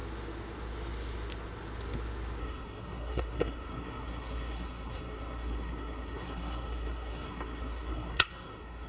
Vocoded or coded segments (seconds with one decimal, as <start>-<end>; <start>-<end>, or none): 2.4-8.9